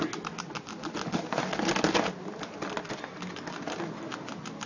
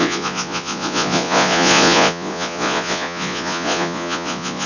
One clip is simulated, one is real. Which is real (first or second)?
first